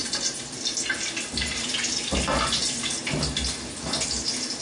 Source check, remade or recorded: recorded